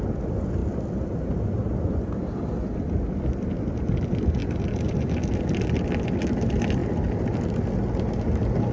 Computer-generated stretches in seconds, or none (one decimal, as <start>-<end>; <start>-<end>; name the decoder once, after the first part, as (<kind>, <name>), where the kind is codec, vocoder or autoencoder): none